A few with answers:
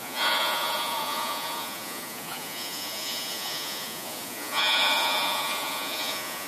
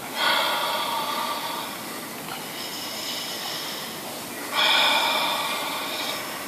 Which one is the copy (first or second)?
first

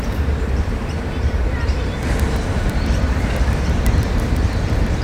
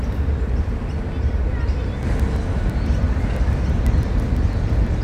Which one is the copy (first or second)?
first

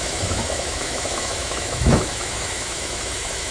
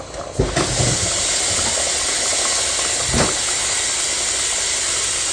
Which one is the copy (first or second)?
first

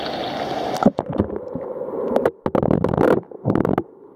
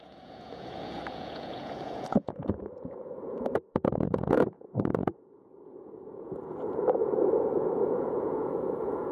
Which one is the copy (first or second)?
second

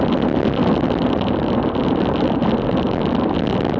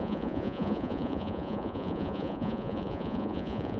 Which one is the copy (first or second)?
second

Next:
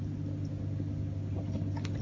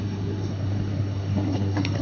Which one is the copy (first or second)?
second